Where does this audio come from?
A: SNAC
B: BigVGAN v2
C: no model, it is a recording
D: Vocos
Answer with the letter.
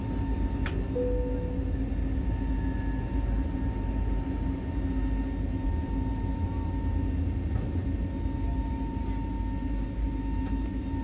C